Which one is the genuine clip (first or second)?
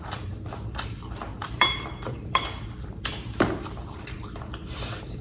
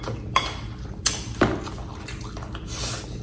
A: second